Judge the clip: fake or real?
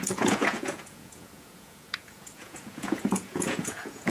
fake